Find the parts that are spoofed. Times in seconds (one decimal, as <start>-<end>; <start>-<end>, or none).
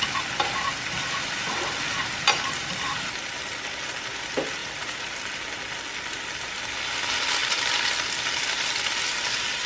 4.6-5.1